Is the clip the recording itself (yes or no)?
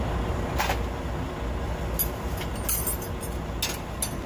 yes